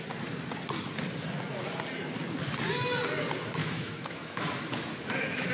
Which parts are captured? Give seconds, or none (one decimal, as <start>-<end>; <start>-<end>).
0.0-3.6

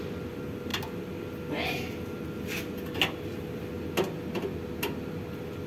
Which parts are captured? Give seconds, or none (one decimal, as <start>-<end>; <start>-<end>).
0.0-5.7